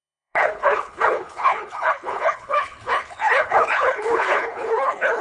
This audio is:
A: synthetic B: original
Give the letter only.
A